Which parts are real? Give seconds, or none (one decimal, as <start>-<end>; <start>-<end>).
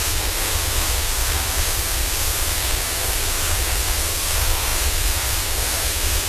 none